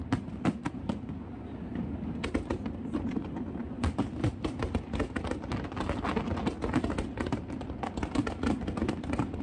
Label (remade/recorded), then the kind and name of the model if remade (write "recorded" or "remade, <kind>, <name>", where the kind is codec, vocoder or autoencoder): recorded